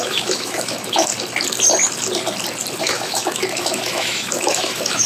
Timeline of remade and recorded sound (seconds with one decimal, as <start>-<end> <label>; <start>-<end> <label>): 0.0-1.1 remade; 1.1-2.8 recorded; 2.8-5.1 remade